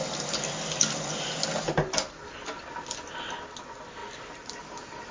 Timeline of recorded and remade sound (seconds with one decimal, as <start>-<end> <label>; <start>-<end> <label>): 0.0-5.1 recorded